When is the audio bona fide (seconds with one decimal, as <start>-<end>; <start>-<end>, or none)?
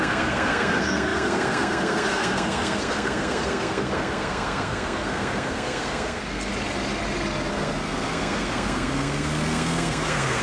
6.5-7.5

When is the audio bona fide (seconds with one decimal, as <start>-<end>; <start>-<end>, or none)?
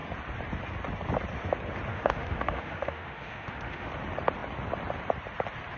0.0-1.9; 3.9-5.8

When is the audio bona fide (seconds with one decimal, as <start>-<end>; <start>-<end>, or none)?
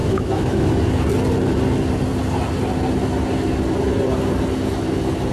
0.7-5.3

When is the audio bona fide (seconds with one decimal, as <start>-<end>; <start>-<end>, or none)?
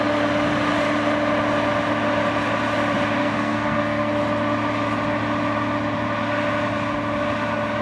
0.0-3.2; 4.1-7.8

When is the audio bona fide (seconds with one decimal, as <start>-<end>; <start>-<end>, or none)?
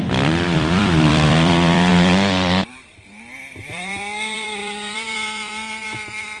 1.9-3.5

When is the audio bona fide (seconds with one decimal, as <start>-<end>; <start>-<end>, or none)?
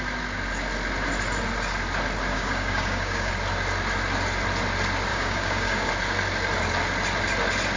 0.0-2.3; 3.3-5.1; 5.9-7.8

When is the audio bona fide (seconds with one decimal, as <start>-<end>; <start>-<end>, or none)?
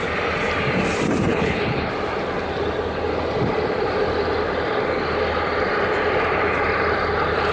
0.0-1.3; 1.9-7.5